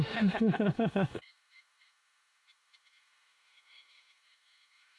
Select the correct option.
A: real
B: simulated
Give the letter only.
B